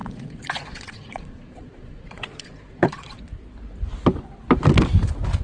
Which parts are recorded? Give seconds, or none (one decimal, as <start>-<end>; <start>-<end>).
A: 3.2-5.4